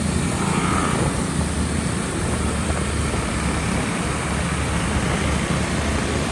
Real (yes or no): yes